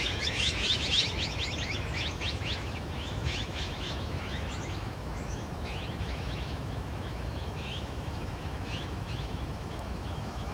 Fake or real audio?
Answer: fake